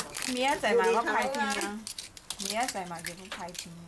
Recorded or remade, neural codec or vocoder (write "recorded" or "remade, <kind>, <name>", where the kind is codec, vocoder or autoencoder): recorded